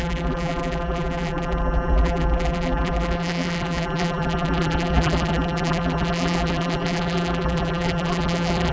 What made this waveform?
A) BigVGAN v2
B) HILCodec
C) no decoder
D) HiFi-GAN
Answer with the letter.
A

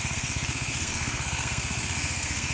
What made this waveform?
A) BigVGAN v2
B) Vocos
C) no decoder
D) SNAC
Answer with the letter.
D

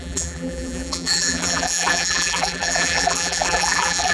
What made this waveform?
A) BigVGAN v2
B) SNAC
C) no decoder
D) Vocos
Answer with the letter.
A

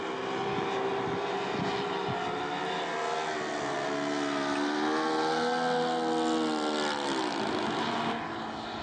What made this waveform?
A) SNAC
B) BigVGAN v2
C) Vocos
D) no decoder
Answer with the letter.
D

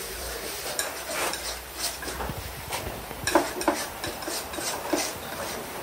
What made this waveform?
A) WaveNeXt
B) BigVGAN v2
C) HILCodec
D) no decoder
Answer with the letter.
B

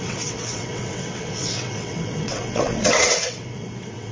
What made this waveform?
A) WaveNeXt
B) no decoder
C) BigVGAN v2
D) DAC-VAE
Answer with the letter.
A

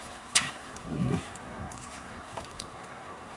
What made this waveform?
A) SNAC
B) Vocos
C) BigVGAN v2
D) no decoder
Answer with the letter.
A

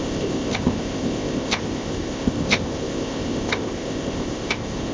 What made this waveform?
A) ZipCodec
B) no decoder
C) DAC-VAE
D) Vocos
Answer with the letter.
A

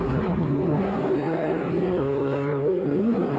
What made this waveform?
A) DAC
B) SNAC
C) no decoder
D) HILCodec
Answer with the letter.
B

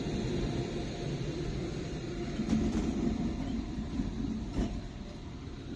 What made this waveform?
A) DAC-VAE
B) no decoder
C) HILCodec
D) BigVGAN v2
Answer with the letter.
D